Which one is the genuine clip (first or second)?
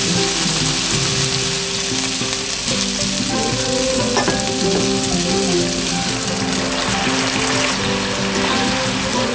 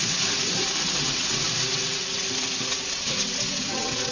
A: first